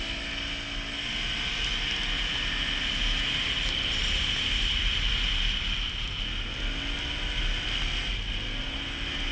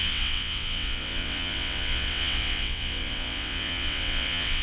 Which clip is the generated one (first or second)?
second